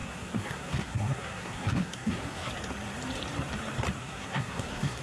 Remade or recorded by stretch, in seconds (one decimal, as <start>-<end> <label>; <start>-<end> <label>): 0.0-2.5 remade; 2.5-4.0 recorded; 4.0-5.0 remade